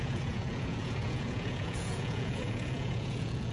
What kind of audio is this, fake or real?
fake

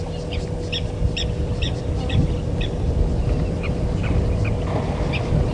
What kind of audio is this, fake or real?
real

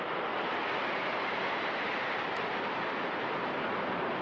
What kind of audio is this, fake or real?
real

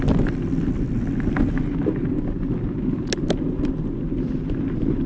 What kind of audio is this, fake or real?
real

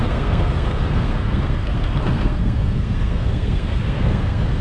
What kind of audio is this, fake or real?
fake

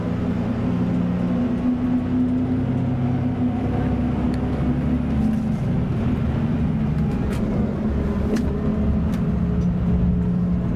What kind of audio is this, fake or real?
real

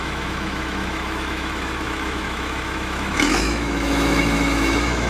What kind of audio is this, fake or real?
fake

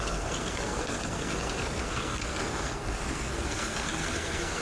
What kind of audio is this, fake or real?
fake